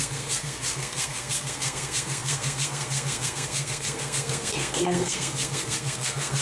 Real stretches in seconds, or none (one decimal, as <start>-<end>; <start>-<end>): none